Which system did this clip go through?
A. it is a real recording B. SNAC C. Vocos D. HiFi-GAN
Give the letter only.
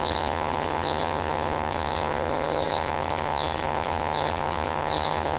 D